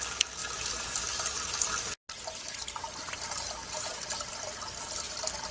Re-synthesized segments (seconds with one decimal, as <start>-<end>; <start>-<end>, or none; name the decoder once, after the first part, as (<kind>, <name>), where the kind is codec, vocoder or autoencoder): none